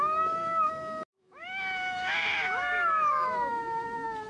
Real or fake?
fake